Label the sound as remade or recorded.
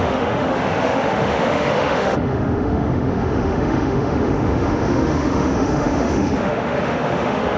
remade